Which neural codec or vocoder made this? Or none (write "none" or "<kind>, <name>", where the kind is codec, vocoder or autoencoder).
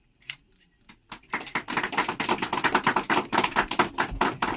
none